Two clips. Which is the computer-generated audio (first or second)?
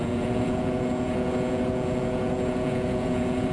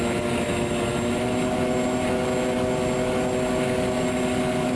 first